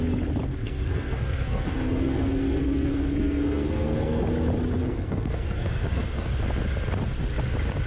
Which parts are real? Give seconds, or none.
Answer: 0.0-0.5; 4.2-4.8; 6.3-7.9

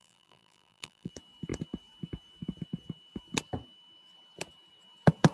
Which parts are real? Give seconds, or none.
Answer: 1.1-5.3

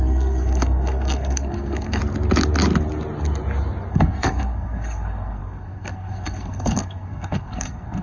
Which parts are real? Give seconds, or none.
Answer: 2.0-3.9

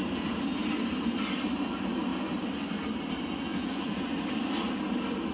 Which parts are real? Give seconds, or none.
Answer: 0.0-3.5; 4.1-5.3

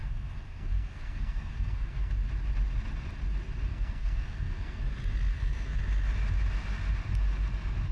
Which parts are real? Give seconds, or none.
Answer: 2.1-3.7; 4.8-5.3; 5.8-7.9

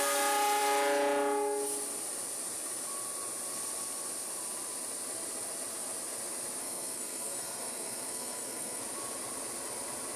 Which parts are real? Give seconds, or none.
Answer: 0.0-6.6; 8.8-10.2

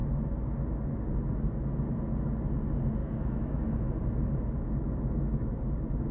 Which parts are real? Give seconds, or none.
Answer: 0.0-3.0; 3.6-6.1